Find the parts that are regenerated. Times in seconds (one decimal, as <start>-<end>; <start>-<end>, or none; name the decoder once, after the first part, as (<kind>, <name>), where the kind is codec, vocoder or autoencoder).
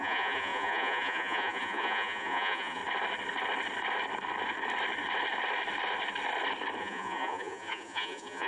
0.0-2.8 (vocoder, Vocos); 6.8-8.5